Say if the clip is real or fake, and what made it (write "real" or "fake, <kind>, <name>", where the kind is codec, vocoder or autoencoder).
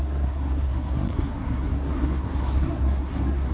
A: fake, codec, SNAC